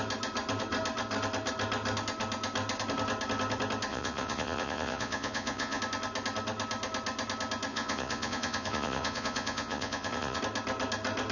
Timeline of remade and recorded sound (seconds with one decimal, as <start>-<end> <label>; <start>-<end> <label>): 0.0-3.9 recorded; 3.9-5.8 remade; 5.8-7.7 recorded; 7.7-10.4 remade; 10.4-11.3 recorded